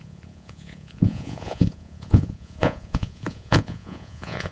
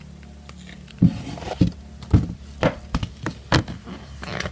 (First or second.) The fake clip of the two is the first